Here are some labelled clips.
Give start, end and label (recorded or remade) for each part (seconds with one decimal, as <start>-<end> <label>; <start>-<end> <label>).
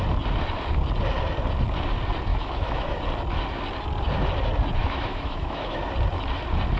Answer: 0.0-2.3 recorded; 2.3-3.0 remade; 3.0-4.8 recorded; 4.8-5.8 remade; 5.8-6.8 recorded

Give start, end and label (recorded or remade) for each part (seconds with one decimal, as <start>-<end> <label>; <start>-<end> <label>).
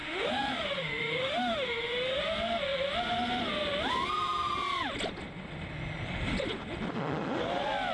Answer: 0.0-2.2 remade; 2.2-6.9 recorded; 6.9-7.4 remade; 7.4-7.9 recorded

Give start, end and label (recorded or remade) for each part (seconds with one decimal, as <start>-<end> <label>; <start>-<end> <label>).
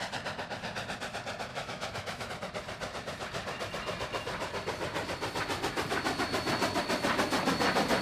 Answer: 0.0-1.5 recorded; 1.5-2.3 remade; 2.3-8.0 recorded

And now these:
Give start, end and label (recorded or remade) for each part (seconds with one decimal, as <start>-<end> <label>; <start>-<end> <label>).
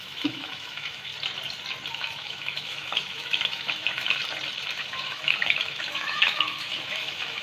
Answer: 0.0-1.1 remade; 1.1-1.9 recorded; 1.9-4.2 remade; 4.2-4.7 recorded; 4.7-7.4 remade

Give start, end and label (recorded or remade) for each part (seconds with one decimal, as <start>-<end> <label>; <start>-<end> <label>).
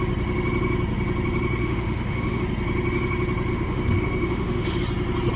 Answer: 0.0-1.6 recorded; 1.6-2.4 remade; 2.4-3.5 recorded; 3.5-4.8 remade; 4.8-5.4 recorded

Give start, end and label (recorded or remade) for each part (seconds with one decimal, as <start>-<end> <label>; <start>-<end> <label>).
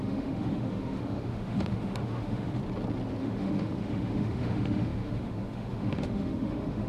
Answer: 0.0-2.6 remade; 2.6-3.2 recorded; 3.2-6.9 remade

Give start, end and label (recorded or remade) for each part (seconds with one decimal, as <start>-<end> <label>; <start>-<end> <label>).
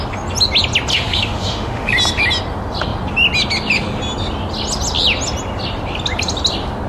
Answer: 0.0-0.9 recorded; 0.9-1.9 remade; 1.9-6.9 recorded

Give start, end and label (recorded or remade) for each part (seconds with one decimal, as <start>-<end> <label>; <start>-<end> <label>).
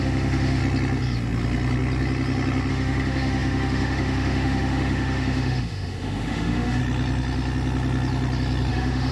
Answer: 0.0-0.6 remade; 0.6-2.7 recorded; 2.7-6.8 remade; 6.8-8.7 recorded; 8.7-9.1 remade